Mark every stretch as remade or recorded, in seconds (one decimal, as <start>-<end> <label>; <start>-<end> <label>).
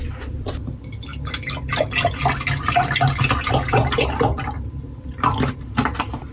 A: 0.0-6.3 recorded